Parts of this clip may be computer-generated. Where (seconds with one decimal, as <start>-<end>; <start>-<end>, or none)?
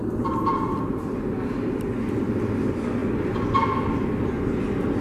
none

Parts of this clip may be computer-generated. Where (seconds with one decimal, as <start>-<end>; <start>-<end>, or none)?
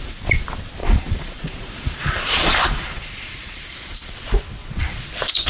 0.8-4.1; 4.6-5.1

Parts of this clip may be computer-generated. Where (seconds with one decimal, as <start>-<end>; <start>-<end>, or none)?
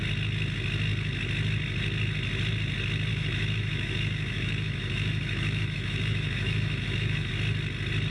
3.1-7.3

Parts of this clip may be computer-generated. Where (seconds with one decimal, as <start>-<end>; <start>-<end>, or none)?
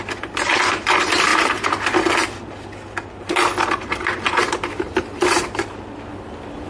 0.0-6.7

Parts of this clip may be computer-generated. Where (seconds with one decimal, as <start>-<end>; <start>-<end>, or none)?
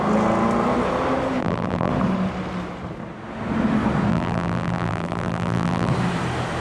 1.4-1.9; 4.1-5.9